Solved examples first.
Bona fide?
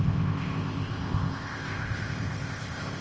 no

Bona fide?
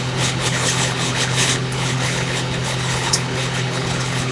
no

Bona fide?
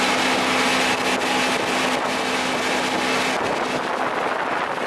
yes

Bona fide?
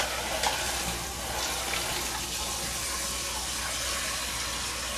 yes